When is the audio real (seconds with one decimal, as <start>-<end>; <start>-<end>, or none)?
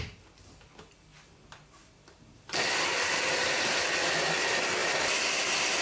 0.0-1.1; 4.1-4.8